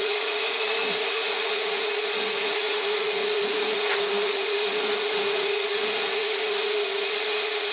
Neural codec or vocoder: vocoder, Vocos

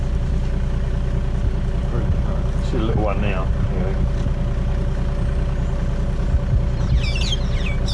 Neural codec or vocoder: none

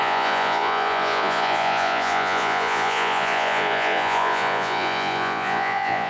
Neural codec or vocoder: vocoder, Vocos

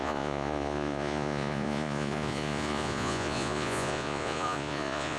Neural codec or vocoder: vocoder, Vocos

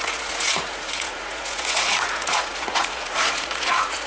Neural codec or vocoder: vocoder, Vocos